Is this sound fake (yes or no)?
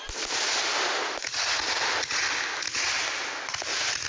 no